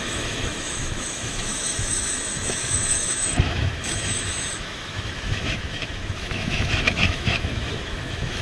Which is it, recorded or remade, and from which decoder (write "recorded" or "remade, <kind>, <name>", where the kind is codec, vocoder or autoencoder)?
remade, autoencoder, DAC-VAE